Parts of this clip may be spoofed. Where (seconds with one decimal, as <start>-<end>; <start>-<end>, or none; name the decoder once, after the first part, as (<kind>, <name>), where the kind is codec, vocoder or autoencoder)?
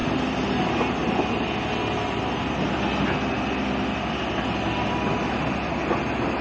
none